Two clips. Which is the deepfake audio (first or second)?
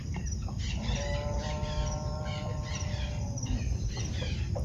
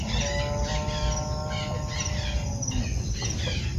first